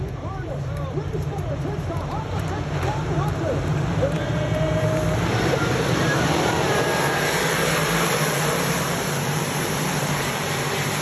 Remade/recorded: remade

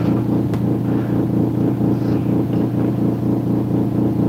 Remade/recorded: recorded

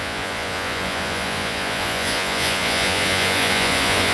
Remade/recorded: remade